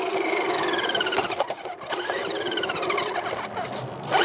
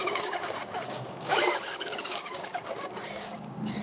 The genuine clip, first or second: first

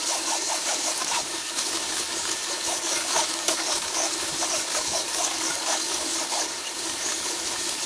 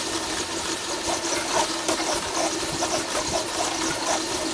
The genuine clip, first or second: second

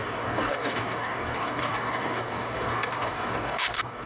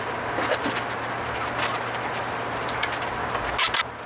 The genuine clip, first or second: second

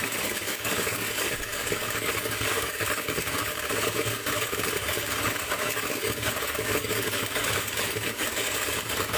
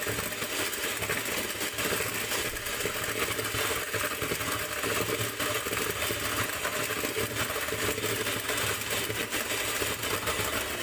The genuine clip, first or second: second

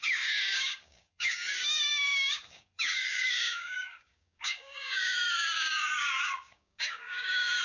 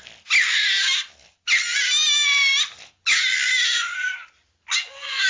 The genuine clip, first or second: second